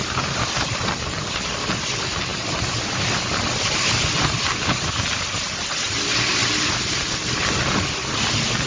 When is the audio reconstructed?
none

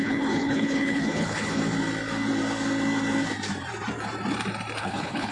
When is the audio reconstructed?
0.0-1.6; 4.8-5.3

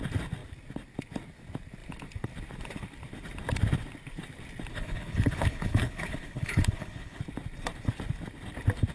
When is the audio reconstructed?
4.7-7.2

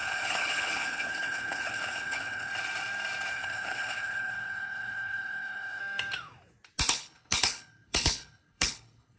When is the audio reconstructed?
0.0-2.5; 3.3-5.8; 6.9-9.2

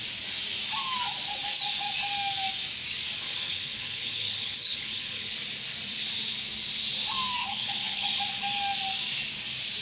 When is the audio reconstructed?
3.2-5.3; 7.4-8.1

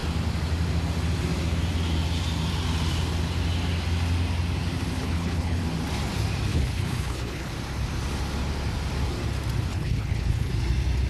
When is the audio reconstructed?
5.0-5.6; 6.5-7.5; 9.7-10.5

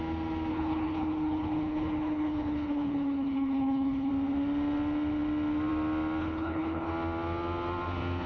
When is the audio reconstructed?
0.5-4.1; 6.2-6.9

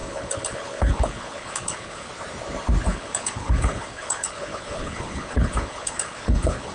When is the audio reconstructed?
0.0-2.1; 2.9-6.7